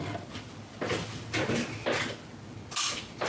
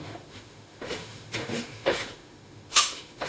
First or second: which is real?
first